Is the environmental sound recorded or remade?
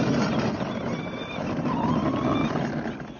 recorded